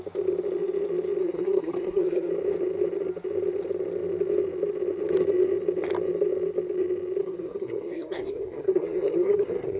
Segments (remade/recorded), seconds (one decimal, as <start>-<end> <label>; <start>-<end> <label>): 0.0-1.2 recorded; 1.2-2.3 remade; 2.3-7.2 recorded; 7.2-9.8 remade